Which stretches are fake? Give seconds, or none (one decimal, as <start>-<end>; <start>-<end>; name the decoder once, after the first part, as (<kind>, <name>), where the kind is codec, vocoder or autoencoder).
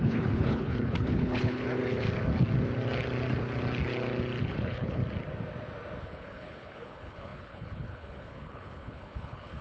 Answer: 0.0-1.8 (codec, HILCodec); 4.4-5.0; 6.0-9.6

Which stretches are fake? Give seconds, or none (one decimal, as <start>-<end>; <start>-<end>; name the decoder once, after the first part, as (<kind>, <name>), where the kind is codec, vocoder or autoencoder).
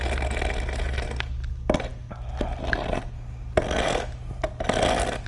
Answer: none